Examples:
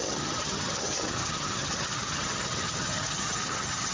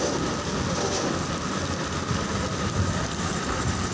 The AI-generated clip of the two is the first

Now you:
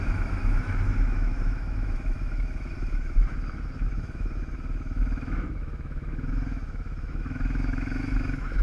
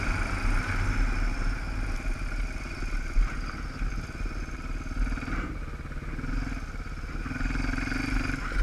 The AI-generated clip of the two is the first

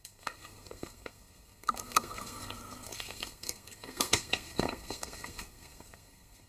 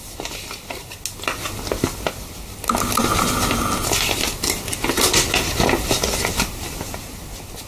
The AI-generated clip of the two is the first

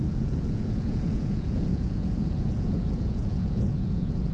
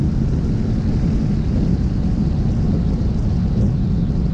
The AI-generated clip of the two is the first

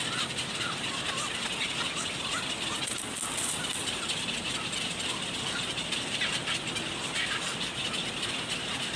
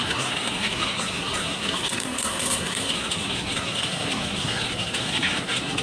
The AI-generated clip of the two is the second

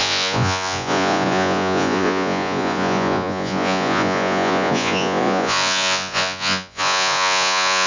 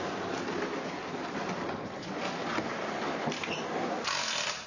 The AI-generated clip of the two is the first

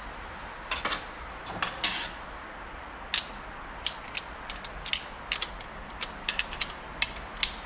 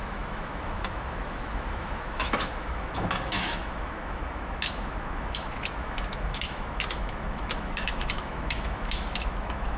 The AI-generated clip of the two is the second